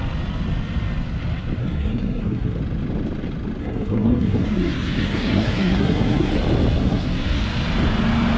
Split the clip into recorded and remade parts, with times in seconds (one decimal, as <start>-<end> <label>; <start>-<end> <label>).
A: 0.0-1.6 recorded; 1.6-2.6 remade; 2.6-3.6 recorded; 3.6-6.3 remade; 6.3-6.8 recorded; 6.8-7.4 remade; 7.4-8.4 recorded